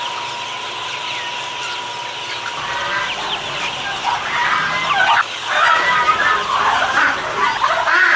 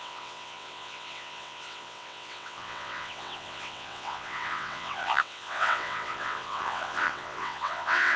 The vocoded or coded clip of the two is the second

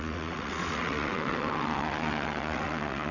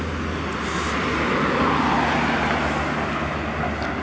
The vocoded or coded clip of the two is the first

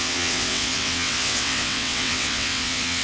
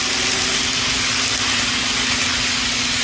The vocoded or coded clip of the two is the first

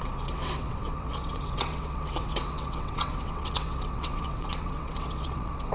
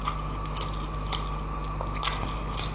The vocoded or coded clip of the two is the first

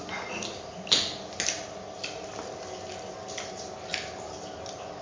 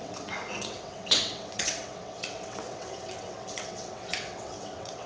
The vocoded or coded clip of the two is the second